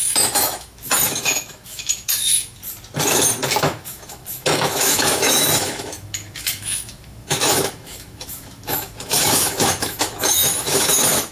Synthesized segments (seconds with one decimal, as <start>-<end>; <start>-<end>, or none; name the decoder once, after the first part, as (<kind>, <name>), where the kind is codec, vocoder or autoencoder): 0.0-2.6 (autoencoder, DAC-VAE); 3.6-11.3